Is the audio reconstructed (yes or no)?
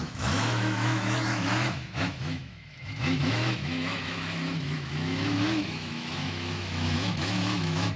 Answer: yes